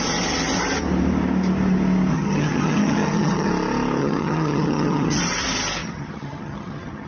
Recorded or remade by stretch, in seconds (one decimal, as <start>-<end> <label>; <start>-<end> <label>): 0.0-2.1 recorded; 2.1-3.5 remade; 3.5-4.0 recorded; 4.0-5.2 remade; 5.2-5.8 recorded; 5.8-7.1 remade